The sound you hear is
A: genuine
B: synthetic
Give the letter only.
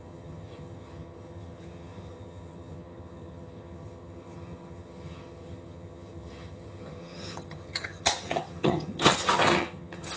B